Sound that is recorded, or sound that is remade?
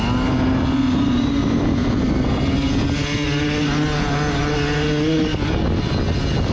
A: recorded